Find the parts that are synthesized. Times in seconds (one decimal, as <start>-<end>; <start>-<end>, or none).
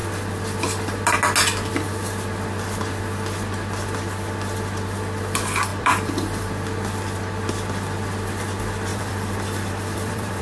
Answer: 5.7-6.5; 8.9-10.4